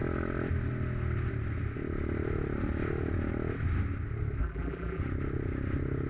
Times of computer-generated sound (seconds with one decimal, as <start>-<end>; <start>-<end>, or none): 4.4-5.0